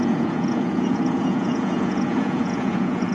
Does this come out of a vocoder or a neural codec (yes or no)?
yes